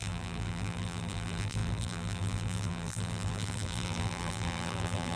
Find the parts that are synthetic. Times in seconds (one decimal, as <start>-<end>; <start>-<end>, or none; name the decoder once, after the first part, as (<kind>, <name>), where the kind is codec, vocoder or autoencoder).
0.0-5.2 (vocoder, BigVGAN v2)